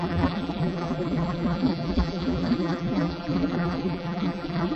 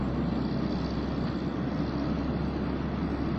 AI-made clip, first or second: first